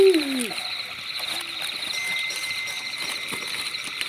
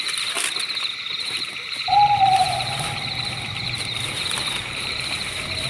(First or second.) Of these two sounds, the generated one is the second